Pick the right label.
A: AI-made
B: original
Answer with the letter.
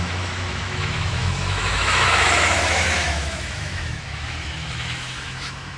A